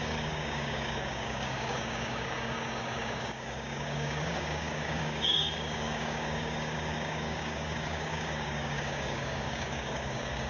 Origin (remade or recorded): remade